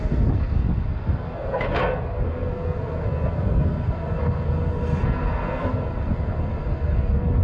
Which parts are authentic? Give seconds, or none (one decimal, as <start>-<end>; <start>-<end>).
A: none